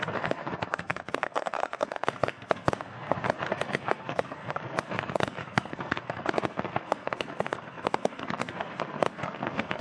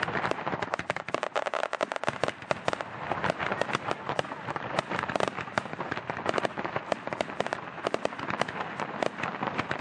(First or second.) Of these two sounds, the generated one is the first